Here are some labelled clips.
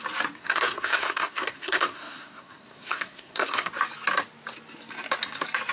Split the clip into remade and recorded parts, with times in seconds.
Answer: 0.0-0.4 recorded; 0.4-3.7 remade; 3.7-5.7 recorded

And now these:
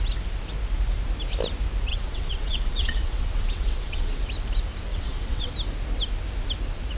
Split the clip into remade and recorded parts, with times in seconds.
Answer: 0.0-1.9 recorded; 1.9-4.2 remade; 4.2-4.9 recorded; 4.9-5.5 remade; 5.5-7.0 recorded

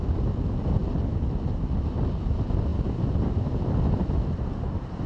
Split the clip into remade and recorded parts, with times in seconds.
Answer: 0.0-2.7 recorded; 2.7-4.2 remade; 4.2-5.1 recorded

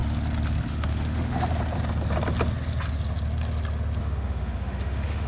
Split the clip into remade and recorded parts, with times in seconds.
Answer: 0.0-0.7 recorded; 0.7-1.5 remade; 1.5-4.0 recorded; 4.0-5.3 remade

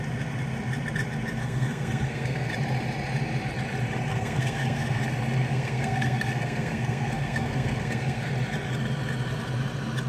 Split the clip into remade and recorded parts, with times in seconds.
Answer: 0.0-1.4 recorded; 1.4-2.5 remade; 2.5-4.1 recorded; 4.1-5.0 remade; 5.0-5.4 recorded; 5.4-8.3 remade; 8.3-10.1 recorded

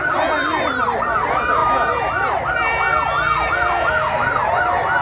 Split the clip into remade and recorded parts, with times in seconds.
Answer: 0.0-5.0 recorded

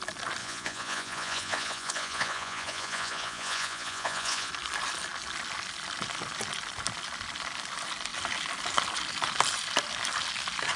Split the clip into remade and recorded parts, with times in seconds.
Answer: 0.0-0.4 recorded; 0.4-4.5 remade; 4.5-10.8 recorded

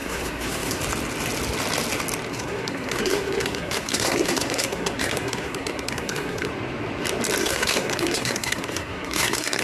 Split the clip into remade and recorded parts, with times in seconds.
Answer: 0.0-0.8 remade; 0.8-2.3 recorded; 2.3-6.5 remade; 6.5-7.4 recorded; 7.4-9.6 remade